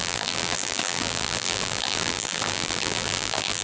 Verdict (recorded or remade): remade